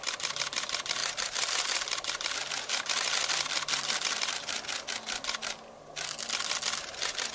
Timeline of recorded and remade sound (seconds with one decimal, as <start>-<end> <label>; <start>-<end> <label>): 0.0-7.3 recorded